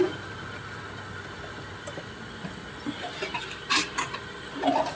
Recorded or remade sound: recorded